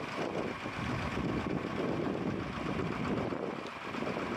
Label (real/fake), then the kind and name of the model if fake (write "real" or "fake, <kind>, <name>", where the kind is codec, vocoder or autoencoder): fake, vocoder, BigVGAN v2